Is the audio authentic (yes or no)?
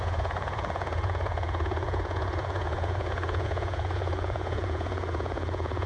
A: no